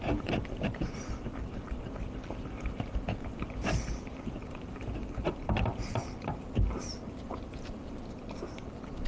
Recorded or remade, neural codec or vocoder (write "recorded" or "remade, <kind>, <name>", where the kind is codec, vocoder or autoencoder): remade, vocoder, BigVGAN v2